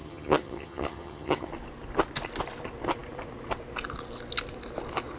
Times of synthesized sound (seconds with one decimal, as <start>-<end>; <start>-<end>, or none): 0.0-1.5